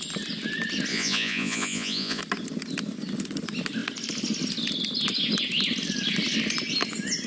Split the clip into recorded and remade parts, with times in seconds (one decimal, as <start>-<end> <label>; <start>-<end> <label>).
0.0-0.9 recorded; 0.9-2.2 remade; 2.2-7.3 recorded